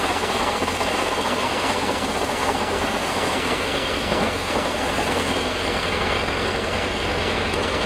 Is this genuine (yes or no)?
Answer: no